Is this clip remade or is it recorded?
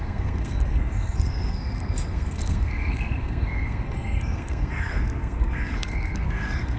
remade